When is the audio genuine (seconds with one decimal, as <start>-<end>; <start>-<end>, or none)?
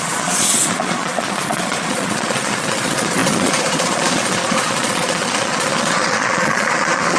none